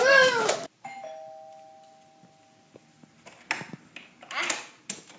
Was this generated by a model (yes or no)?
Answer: no